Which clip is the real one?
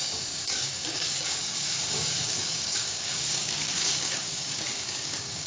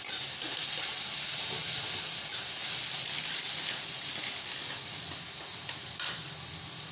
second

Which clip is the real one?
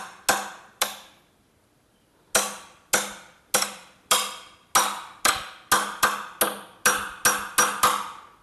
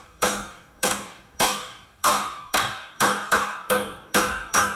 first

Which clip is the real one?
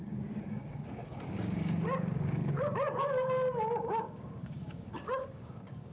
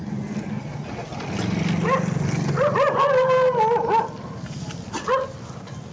second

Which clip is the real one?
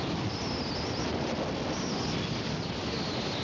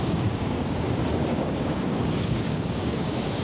first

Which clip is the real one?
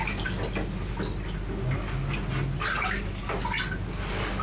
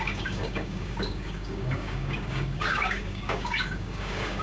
first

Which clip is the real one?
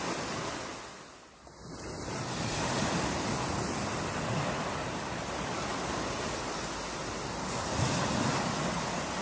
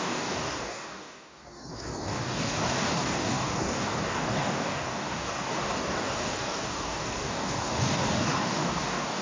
first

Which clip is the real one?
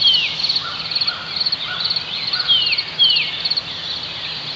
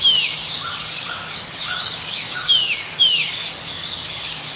first